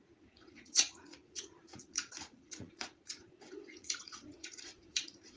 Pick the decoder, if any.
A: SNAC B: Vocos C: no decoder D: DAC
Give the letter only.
B